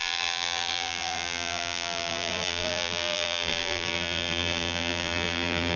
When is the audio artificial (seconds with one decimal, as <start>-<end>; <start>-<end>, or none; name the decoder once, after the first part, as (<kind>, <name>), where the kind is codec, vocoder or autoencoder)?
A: 0.0-5.8 (vocoder, BigVGAN v2)